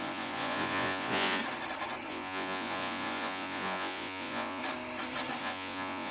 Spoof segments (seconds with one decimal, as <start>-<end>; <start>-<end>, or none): 0.0-1.4; 2.1-4.6; 5.4-6.1